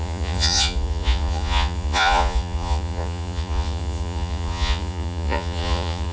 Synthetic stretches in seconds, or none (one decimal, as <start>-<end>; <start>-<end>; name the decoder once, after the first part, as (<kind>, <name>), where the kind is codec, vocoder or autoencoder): 0.0-6.1 (vocoder, Vocos)